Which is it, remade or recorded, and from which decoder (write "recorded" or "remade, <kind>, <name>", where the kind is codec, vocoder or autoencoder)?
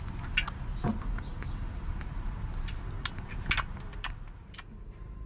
recorded